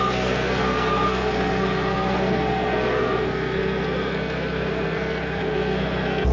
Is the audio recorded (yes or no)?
no